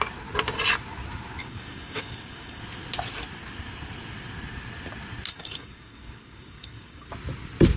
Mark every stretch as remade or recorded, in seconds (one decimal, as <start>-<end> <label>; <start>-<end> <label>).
0.0-1.4 recorded; 1.4-2.6 remade; 2.6-5.3 recorded; 5.3-7.1 remade; 7.1-7.8 recorded